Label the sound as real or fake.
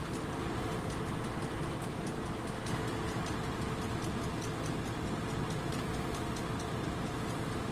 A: real